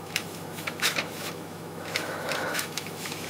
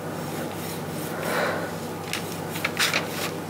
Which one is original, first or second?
second